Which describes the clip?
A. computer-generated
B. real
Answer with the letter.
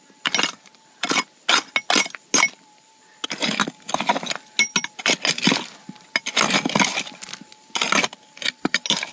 B